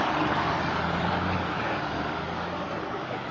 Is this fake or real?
fake